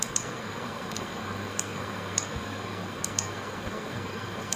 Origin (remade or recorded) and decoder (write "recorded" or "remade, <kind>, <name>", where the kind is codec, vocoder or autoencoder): remade, codec, SNAC